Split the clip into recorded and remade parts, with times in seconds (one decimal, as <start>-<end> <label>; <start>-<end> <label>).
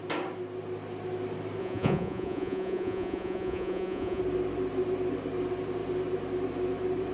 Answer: 0.0-1.6 recorded; 1.6-4.2 remade; 4.2-7.1 recorded